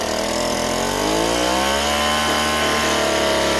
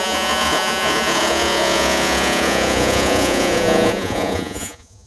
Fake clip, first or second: second